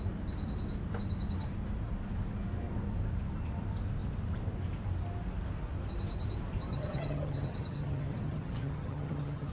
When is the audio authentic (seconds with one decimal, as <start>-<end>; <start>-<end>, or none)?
0.0-6.7